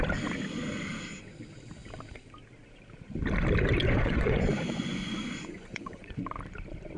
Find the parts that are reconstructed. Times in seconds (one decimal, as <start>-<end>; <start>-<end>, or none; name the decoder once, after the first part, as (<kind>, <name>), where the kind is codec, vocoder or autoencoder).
3.8-6.2 (vocoder, Vocos)